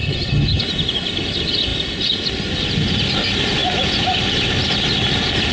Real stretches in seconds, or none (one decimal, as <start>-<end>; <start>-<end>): 0.6-5.5